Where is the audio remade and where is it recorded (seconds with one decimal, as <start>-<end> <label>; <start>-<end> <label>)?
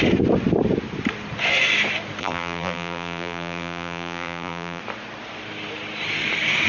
0.0-2.2 recorded; 2.2-4.8 remade; 4.8-6.7 recorded